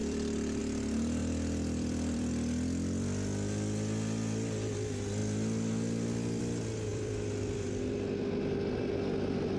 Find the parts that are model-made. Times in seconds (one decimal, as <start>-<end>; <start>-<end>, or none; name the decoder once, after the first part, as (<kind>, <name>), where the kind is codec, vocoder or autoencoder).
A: 0.0-0.6 (vocoder, BigVGAN v2); 1.2-2.3; 6.9-7.8